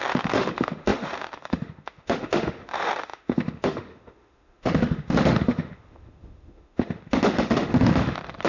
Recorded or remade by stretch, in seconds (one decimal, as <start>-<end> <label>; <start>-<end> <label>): 0.0-8.5 remade